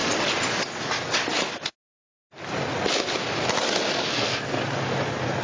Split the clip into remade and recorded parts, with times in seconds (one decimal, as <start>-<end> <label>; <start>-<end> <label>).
0.0-4.1 recorded; 4.1-4.6 remade; 4.6-5.4 recorded